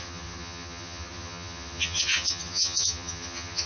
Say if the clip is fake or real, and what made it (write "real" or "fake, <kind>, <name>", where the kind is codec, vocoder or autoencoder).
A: fake, vocoder, HiFi-GAN